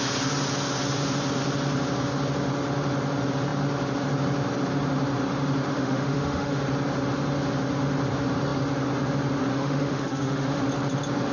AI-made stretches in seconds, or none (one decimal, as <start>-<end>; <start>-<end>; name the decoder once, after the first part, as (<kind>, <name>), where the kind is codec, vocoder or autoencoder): 5.7-6.6 (autoencoder, DAC-VAE); 9.5-10.6